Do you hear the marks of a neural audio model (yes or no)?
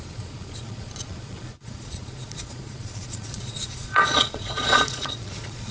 yes